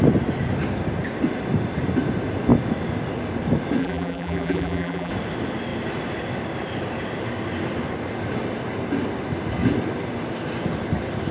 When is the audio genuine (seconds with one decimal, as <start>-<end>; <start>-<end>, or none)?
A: 0.0-3.8; 5.1-11.3